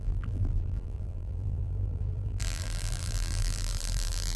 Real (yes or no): no